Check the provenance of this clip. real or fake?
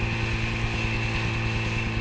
real